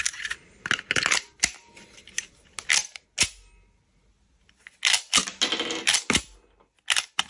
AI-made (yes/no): no